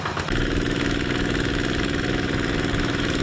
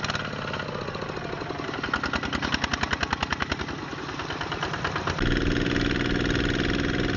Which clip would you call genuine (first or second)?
second